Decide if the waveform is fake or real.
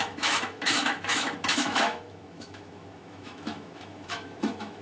fake